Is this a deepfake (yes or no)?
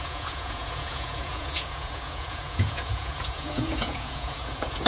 yes